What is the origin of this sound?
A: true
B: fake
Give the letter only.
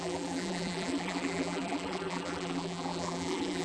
B